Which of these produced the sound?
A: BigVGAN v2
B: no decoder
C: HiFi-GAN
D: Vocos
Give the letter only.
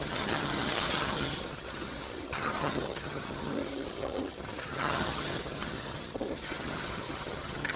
C